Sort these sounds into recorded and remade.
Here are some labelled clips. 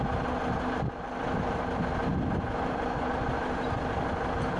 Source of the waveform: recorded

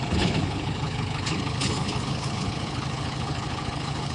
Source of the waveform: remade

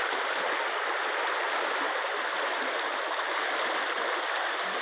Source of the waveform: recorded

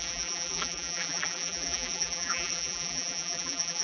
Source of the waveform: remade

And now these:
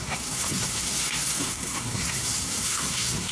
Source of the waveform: remade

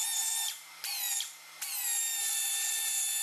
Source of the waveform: recorded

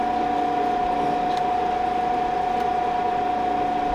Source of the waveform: recorded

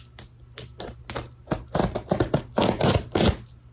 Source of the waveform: recorded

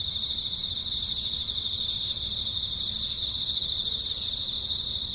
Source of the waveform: recorded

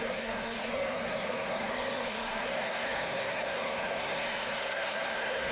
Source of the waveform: remade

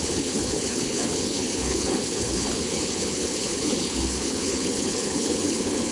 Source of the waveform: remade